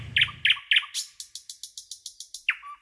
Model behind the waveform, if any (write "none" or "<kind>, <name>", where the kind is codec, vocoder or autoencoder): none